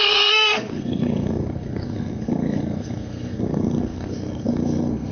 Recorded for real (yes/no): no